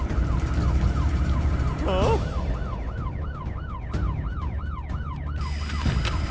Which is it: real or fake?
real